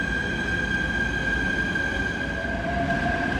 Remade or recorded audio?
recorded